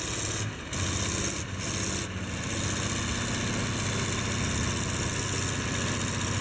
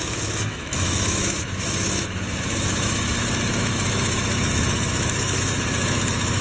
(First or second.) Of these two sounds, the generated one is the second